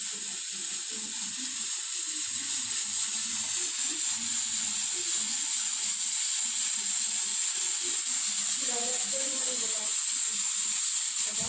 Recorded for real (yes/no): yes